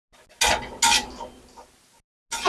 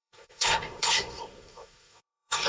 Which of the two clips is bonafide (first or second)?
first